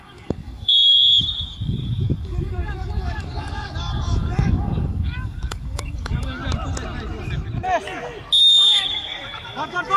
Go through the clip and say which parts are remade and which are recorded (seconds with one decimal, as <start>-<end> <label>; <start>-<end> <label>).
0.0-6.4 remade; 6.4-8.4 recorded; 8.4-10.0 remade